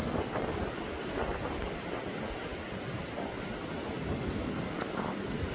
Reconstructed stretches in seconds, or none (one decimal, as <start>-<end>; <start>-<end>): none